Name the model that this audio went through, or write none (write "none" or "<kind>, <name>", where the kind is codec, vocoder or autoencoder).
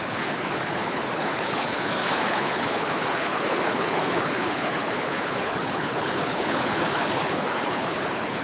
codec, HILCodec